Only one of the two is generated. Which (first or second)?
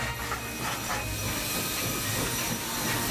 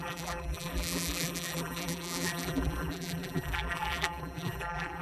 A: second